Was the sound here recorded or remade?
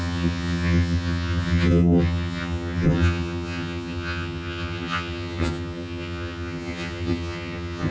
remade